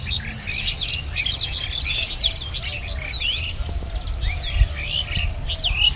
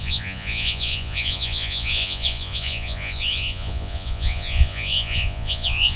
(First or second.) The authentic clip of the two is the first